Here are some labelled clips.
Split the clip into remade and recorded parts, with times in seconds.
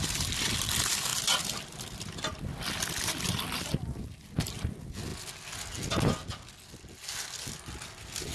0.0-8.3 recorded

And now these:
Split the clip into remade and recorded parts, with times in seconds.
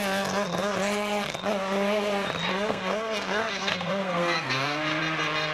0.0-2.5 recorded; 2.5-5.0 remade; 5.0-5.5 recorded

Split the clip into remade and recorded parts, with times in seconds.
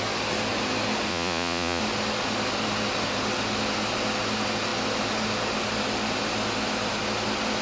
0.0-1.1 recorded; 1.1-1.8 remade; 1.8-7.6 recorded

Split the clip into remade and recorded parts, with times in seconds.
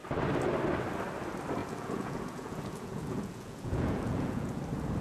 0.0-1.6 recorded; 1.6-4.6 remade; 4.6-5.0 recorded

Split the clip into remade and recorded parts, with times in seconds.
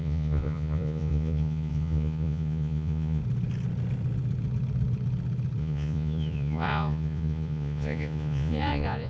0.0-3.2 remade; 3.2-5.6 recorded; 5.6-9.1 remade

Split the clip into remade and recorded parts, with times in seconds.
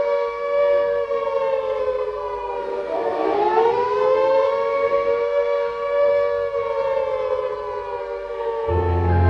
0.0-6.1 remade; 6.1-8.0 recorded; 8.0-9.3 remade